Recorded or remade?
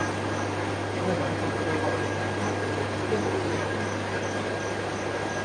recorded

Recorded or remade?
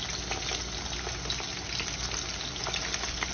recorded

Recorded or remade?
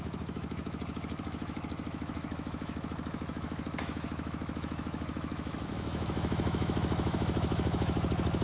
remade